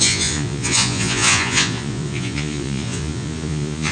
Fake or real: fake